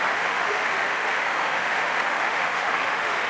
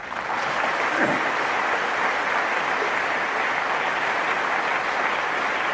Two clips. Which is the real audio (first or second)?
second